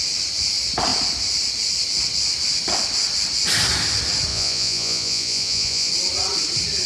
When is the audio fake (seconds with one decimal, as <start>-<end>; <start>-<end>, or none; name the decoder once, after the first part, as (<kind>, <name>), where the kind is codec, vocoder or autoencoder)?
4.3-5.9 (vocoder, Vocos)